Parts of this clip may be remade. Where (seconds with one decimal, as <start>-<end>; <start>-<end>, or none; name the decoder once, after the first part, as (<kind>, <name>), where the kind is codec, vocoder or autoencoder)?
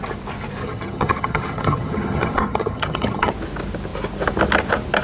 0.6-3.3 (vocoder, HiFi-GAN)